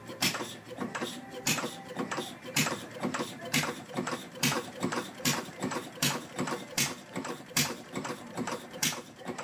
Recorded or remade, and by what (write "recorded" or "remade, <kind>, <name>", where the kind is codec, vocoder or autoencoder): remade, vocoder, BigVGAN v2